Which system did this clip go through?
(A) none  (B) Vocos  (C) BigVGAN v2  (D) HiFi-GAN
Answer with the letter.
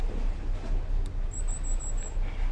A